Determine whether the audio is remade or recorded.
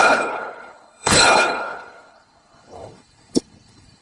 remade